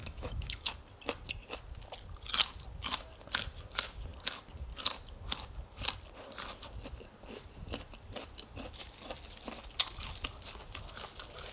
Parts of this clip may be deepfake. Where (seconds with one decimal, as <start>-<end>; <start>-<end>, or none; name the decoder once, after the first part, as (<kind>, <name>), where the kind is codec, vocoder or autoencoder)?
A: 0.0-0.7 (autoencoder, DAC-VAE)